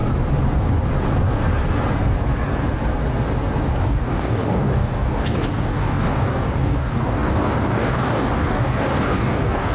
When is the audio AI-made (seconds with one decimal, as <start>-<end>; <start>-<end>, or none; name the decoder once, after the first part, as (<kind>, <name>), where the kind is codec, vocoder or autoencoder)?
3.8-9.7 (codec, DAC)